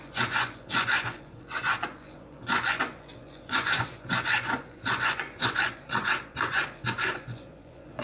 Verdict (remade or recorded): remade